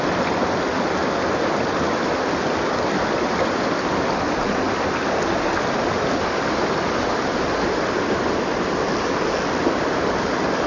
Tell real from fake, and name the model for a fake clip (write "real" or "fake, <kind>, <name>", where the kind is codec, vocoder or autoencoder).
real